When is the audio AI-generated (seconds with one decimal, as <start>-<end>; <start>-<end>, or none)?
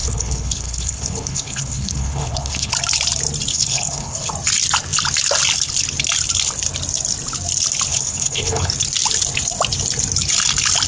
0.0-2.7; 3.5-4.3; 7.9-8.7